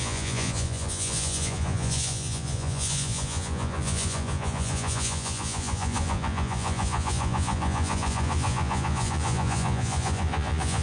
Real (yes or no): no